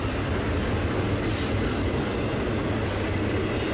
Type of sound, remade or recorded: recorded